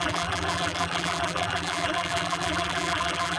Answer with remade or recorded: remade